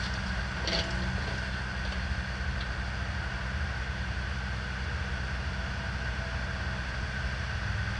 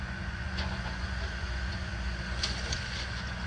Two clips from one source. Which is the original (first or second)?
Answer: first